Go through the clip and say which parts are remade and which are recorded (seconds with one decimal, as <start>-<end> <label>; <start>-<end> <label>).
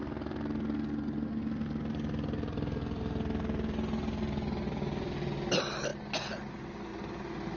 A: 0.0-7.6 recorded